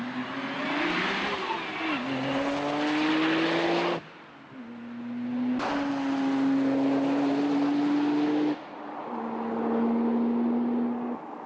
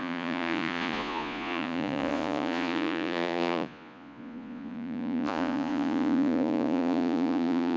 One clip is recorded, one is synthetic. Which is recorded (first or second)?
first